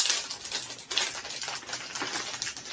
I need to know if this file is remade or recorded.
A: recorded